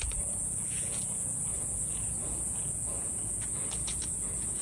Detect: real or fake fake